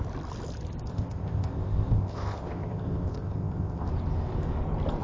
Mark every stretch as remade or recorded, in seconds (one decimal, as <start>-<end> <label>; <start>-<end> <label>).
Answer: 0.0-0.9 recorded; 0.9-3.9 remade; 3.9-5.0 recorded